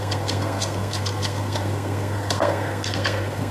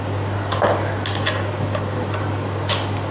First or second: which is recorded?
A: second